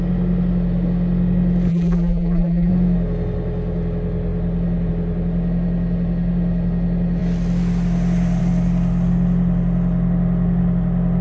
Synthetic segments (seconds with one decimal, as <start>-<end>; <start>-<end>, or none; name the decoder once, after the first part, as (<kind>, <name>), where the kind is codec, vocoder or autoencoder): 1.7-2.7 (vocoder, BigVGAN v2)